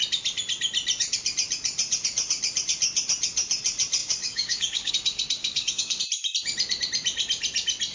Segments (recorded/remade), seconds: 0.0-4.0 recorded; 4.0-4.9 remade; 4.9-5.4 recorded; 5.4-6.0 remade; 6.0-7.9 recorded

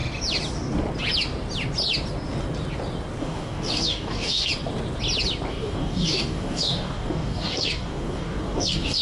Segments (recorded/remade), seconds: 0.0-3.2 recorded; 3.2-4.5 remade; 4.5-5.5 recorded; 5.5-9.0 remade